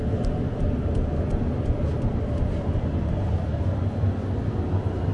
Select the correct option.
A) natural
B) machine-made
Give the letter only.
A